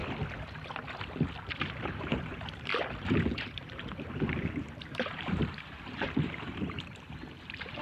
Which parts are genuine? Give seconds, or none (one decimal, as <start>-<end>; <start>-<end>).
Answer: 0.0-1.7